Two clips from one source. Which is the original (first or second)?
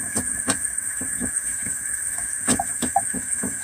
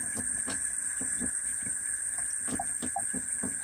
second